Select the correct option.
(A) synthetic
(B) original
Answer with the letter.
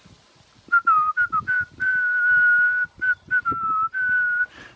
B